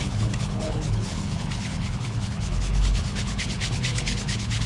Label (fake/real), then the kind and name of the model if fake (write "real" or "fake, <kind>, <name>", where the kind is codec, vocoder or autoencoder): fake, codec, HILCodec